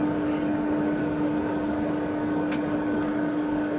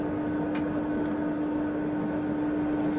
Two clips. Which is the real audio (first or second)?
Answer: second